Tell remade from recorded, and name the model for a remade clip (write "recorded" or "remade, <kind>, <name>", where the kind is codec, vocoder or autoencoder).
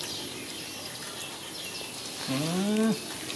recorded